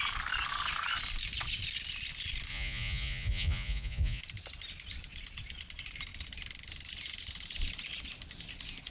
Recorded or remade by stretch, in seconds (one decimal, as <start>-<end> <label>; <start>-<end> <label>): 0.0-2.5 recorded; 2.5-4.2 remade; 4.2-8.9 recorded